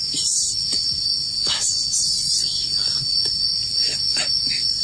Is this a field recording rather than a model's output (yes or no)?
yes